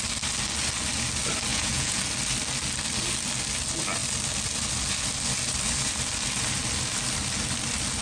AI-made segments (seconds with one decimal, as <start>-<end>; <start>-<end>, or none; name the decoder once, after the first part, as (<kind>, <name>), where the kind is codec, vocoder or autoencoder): 1.5-2.0 (vocoder, Vocos)